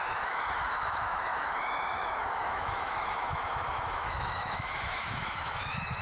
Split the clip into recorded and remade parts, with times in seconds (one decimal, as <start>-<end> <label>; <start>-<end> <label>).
0.0-6.0 remade